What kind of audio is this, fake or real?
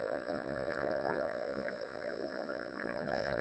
fake